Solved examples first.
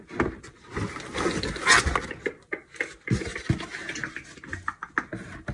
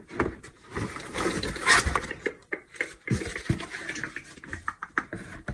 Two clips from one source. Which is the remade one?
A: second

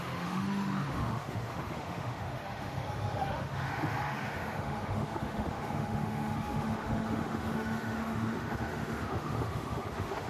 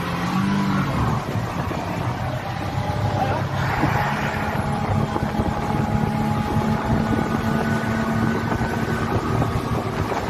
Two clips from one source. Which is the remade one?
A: first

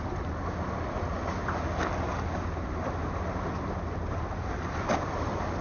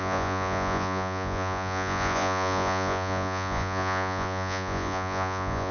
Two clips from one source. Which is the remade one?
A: second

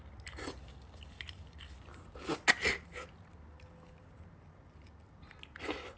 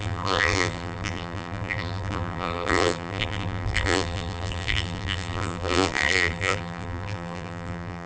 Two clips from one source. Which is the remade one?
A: second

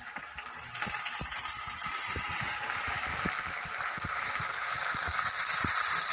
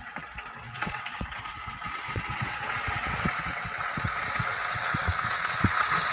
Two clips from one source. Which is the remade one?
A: second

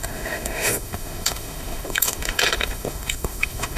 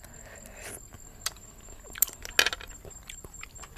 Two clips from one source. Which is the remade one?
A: first